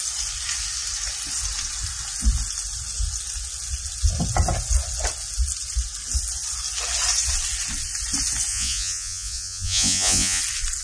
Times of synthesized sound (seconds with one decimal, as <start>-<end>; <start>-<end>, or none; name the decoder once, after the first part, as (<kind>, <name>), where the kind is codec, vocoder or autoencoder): 8.5-10.4 (vocoder, Vocos)